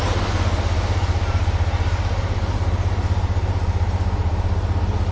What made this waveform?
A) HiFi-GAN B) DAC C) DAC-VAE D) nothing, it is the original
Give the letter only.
D